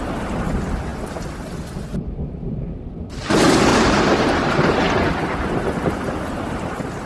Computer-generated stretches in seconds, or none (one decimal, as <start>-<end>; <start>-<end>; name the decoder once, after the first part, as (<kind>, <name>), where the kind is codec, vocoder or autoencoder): 3.7-4.9 (vocoder, BigVGAN v2)